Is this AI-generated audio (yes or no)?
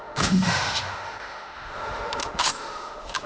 yes